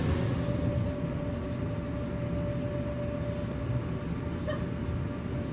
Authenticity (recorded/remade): recorded